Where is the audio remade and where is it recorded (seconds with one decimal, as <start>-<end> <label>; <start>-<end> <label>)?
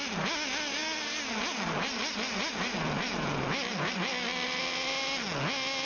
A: 0.0-5.9 recorded